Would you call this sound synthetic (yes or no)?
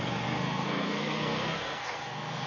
yes